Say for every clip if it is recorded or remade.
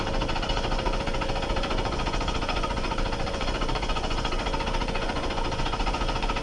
remade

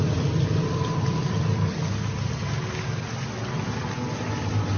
recorded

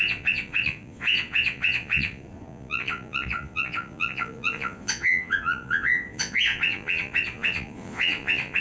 remade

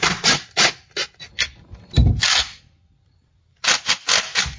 recorded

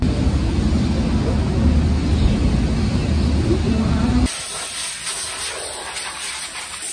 recorded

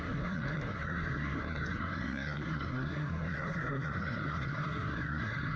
remade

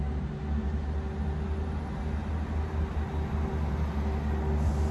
recorded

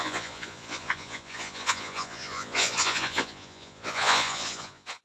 remade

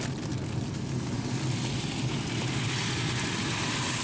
recorded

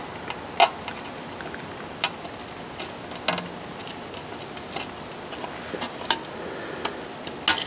recorded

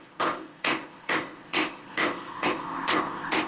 remade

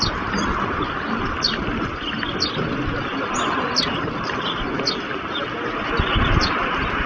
recorded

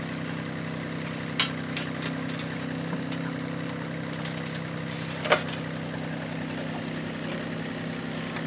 recorded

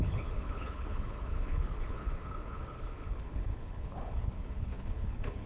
remade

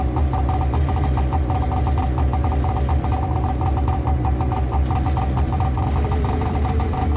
remade